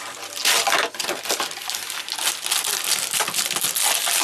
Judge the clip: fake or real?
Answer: real